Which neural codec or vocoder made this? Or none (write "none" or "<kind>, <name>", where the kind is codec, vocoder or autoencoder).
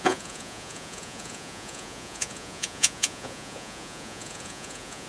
vocoder, Vocos